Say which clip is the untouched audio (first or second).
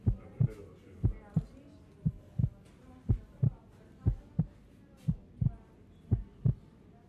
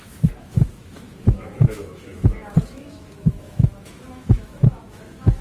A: first